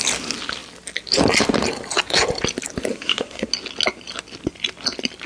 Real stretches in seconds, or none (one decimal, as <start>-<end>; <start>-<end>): 0.0-2.9; 3.5-5.3